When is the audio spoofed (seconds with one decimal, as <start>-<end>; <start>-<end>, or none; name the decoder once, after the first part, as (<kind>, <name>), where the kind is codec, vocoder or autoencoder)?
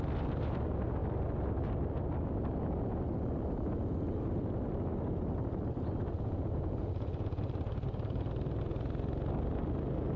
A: 6.1-7.4 (vocoder, Vocos)